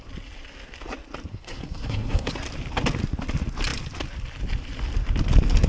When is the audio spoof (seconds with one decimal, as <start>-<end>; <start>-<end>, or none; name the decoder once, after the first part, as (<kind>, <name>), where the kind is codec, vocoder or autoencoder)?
1.3-2.3 (codec, SNAC)